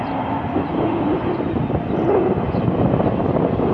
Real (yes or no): yes